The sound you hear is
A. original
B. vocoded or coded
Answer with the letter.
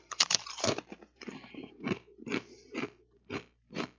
B